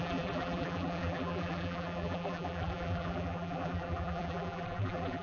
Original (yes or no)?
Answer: no